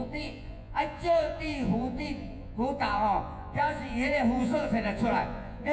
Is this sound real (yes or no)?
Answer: no